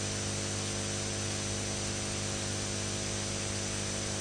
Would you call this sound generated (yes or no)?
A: no